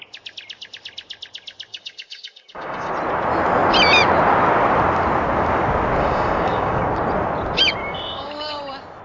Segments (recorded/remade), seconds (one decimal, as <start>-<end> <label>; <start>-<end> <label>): 0.0-1.7 recorded; 1.7-2.9 remade; 2.9-6.0 recorded; 6.0-6.8 remade; 6.8-7.8 recorded; 7.8-8.6 remade; 8.6-9.0 recorded